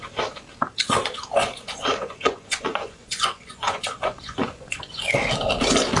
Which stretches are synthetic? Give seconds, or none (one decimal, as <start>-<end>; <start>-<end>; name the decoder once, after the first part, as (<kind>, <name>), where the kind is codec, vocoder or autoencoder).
1.4-5.0 (vocoder, Vocos)